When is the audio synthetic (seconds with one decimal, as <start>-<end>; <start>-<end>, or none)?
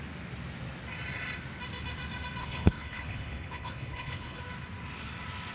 2.4-4.4